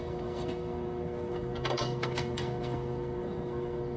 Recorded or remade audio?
remade